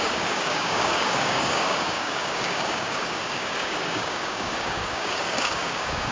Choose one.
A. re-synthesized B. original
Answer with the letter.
A